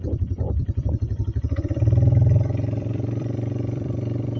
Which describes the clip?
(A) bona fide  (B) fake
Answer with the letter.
B